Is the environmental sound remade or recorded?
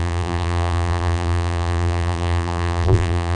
remade